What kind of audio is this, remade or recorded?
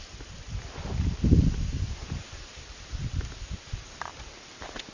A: recorded